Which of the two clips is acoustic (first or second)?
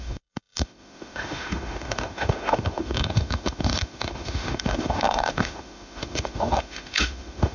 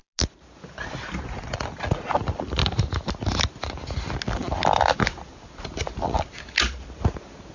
second